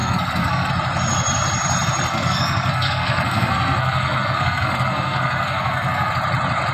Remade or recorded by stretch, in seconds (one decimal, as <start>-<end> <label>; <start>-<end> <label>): 0.0-0.7 remade; 0.7-2.1 recorded; 2.1-6.1 remade; 6.1-6.7 recorded